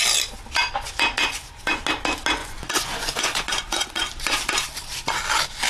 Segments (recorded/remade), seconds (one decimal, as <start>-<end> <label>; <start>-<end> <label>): 0.0-1.2 recorded; 1.2-1.8 remade; 1.8-2.4 recorded; 2.4-4.1 remade; 4.1-5.7 recorded